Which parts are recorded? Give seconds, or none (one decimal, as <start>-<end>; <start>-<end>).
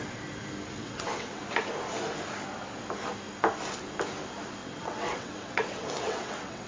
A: 0.0-0.8; 1.4-4.6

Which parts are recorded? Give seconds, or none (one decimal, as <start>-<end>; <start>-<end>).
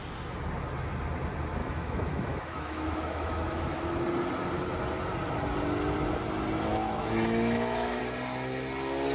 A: 0.0-1.6; 3.8-6.7; 8.0-9.1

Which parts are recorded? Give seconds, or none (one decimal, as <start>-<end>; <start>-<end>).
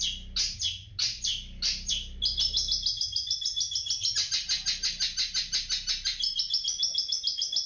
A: 0.0-7.7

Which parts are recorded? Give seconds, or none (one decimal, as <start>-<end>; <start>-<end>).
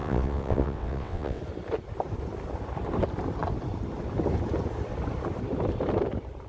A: 1.4-6.5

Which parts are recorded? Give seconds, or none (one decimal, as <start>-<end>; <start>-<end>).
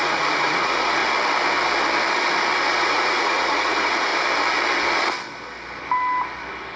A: 1.0-2.8; 4.1-6.8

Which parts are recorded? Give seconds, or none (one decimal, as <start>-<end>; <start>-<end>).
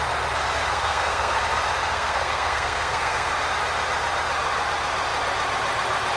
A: 0.0-0.7; 1.4-1.8; 3.3-6.2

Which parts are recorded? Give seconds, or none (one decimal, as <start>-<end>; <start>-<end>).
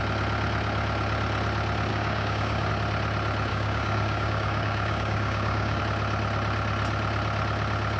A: 0.0-1.9; 2.7-3.5; 5.8-8.0